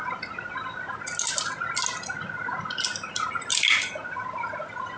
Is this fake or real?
real